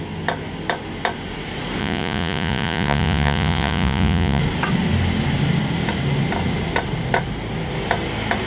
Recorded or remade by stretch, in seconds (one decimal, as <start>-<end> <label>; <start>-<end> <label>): 0.0-1.8 recorded; 1.8-4.4 remade; 4.4-8.5 recorded